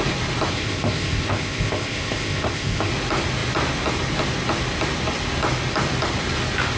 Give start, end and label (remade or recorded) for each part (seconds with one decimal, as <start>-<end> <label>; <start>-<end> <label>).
0.0-0.5 recorded; 0.5-2.9 remade; 2.9-6.8 recorded